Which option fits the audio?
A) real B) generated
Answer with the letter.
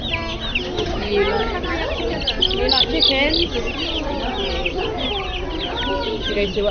A